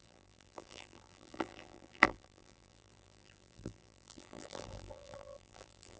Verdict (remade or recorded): remade